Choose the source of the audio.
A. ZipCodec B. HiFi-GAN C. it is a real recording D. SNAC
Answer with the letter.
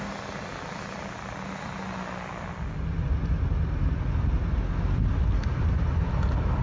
C